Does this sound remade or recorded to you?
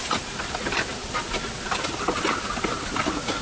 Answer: recorded